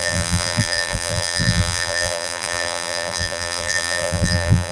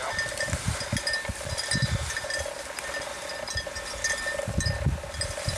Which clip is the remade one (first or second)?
first